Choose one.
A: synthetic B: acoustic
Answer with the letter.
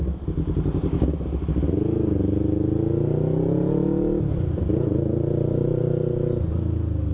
B